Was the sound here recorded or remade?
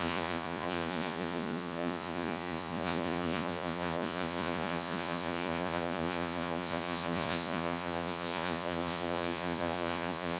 remade